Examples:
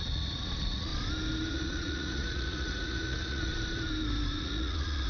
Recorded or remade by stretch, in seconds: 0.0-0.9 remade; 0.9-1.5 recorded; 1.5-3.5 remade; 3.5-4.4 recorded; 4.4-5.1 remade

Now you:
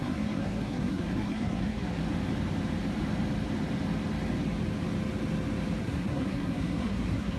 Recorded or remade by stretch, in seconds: 0.0-2.0 remade; 2.0-5.8 recorded; 5.8-7.4 remade

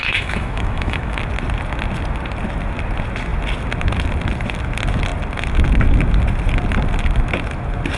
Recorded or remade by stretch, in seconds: 0.0-1.2 remade; 1.2-8.0 recorded